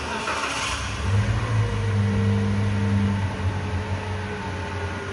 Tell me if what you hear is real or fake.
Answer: real